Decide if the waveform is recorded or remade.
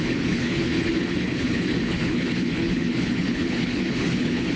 remade